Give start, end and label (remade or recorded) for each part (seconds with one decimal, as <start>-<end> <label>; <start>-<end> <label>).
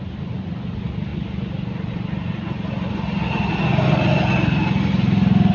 0.0-1.1 recorded; 1.1-3.6 remade; 3.6-5.5 recorded